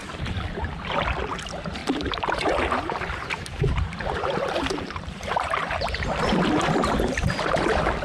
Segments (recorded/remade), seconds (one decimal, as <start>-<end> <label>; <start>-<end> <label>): 0.0-1.8 recorded; 1.8-6.1 remade; 6.1-8.0 recorded